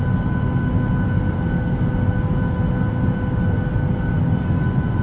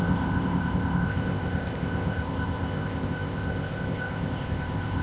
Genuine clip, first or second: first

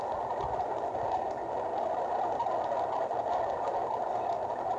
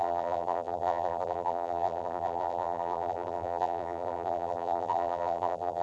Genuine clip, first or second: first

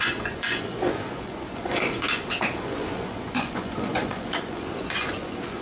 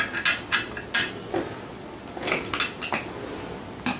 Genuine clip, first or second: second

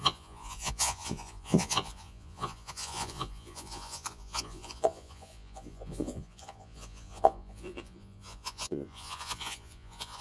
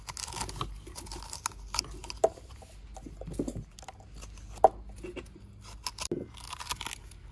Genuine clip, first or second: second